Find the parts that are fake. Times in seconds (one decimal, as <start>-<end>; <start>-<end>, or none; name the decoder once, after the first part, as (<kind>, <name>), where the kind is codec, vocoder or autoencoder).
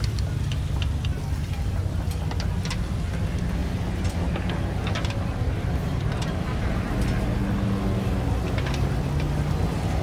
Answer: 3.6-4.5 (vocoder, BigVGAN v2); 6.5-7.0